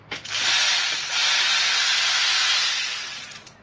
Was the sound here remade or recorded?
recorded